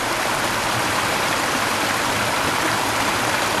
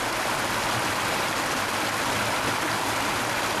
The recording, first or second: second